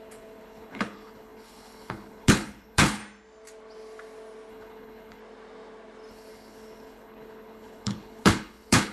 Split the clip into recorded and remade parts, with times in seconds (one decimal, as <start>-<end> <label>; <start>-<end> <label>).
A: 0.0-3.0 remade; 3.0-4.5 recorded; 4.5-5.2 remade; 5.2-6.1 recorded; 6.1-8.9 remade